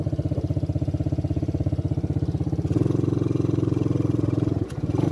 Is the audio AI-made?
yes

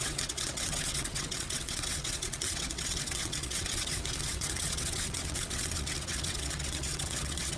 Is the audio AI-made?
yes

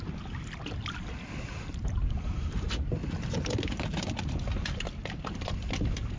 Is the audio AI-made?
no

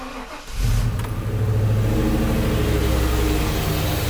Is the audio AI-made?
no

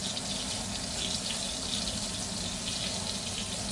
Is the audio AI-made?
no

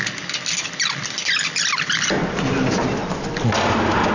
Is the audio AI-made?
no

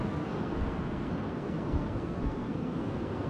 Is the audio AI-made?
yes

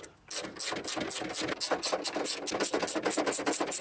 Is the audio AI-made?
no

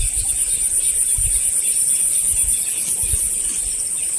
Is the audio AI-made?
no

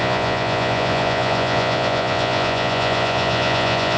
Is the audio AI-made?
yes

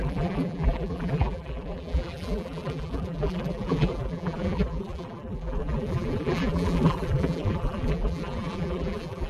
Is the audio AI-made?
yes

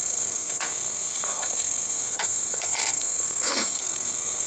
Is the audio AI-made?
yes